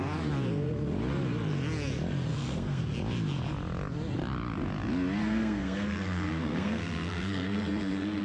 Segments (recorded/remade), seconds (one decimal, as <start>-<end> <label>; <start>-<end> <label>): 0.0-2.3 recorded; 2.3-2.8 remade; 2.8-5.2 recorded; 5.2-8.2 remade